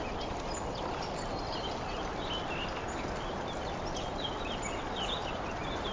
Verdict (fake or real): real